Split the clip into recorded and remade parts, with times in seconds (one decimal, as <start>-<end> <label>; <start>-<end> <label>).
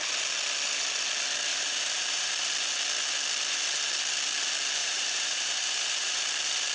0.0-1.5 recorded; 1.5-2.4 remade; 2.4-4.8 recorded; 4.8-6.2 remade; 6.2-6.7 recorded